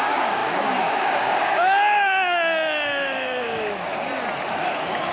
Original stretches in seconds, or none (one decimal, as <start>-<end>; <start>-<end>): 3.9-4.5